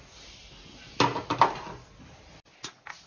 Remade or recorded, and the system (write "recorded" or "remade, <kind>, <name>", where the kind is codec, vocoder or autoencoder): recorded